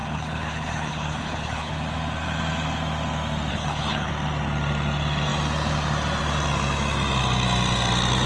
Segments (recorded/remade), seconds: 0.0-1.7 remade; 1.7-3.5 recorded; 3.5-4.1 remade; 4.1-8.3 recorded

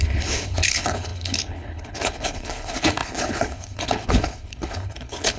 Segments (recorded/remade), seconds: 0.0-5.4 remade

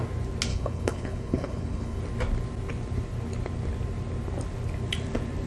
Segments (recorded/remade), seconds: 0.0-0.5 recorded; 0.5-2.0 remade; 2.0-5.5 recorded